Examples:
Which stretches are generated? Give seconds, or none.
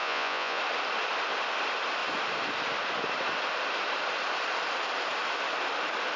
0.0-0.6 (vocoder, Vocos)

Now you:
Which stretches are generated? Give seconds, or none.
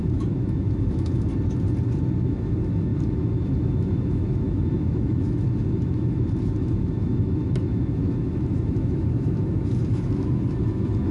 0.0-1.3 (autoencoder, DAC-VAE); 2.2-11.1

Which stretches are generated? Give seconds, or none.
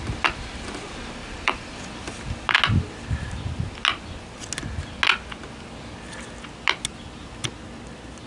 1.2-1.8 (vocoder, BigVGAN v2)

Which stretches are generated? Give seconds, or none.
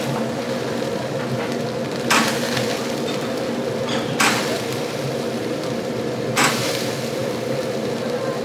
0.0-8.4 (vocoder, BigVGAN v2)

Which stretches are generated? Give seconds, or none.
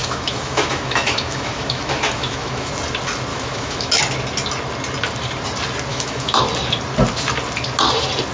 0.0-2.7 (autoencoder, DAC-VAE); 3.3-4.0; 5.9-6.4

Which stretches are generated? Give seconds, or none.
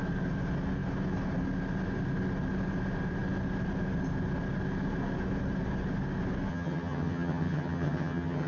6.5-8.5 (vocoder, HiFi-GAN)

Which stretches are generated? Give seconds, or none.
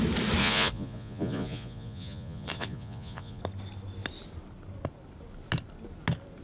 0.4-3.4 (vocoder, Vocos)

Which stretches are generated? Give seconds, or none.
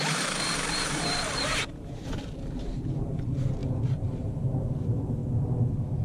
0.0-5.2 (vocoder, BigVGAN v2)